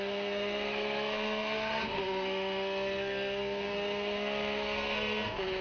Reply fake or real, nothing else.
fake